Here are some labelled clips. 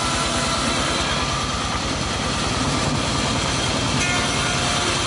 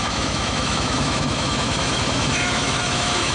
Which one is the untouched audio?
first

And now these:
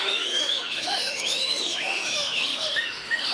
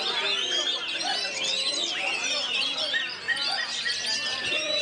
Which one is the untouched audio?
second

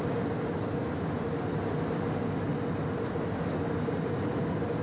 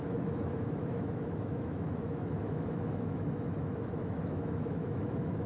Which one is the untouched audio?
first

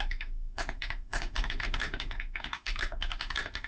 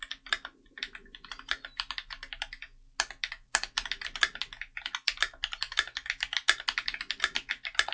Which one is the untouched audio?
second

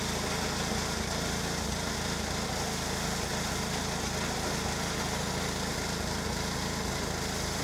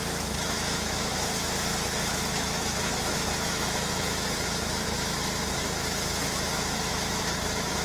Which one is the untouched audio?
first